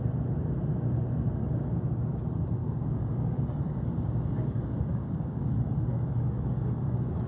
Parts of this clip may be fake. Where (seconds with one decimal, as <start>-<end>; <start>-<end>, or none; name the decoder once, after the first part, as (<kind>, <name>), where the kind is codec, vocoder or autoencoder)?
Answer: 1.4-1.9 (codec, DAC); 2.6-7.3